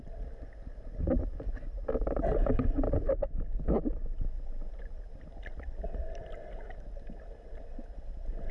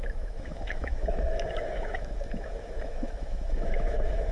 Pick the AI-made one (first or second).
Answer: second